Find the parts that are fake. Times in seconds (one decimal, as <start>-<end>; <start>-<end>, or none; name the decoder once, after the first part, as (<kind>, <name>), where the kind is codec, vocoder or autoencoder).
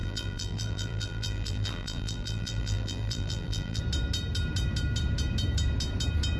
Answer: 0.0-3.8 (vocoder, BigVGAN v2)